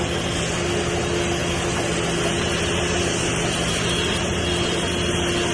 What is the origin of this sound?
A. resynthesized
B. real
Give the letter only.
B